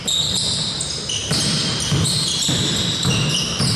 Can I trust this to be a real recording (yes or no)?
yes